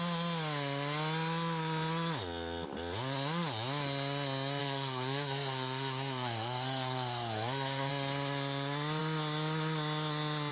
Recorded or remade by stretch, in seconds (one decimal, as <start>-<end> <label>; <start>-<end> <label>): 0.0-4.6 recorded; 4.6-7.9 remade; 7.9-10.5 recorded